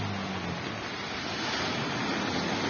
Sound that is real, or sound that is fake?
real